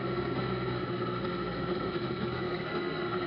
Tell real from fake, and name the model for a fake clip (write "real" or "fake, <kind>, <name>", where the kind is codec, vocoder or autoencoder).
fake, codec, SNAC